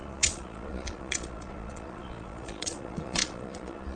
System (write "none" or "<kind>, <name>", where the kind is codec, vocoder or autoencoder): vocoder, Vocos